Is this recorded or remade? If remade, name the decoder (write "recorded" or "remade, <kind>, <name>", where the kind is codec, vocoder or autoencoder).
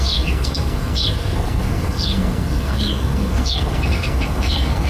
remade, codec, SNAC